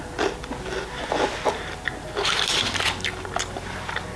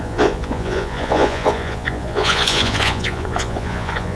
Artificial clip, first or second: second